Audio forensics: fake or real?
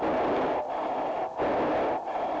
real